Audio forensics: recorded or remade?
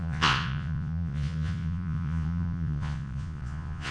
remade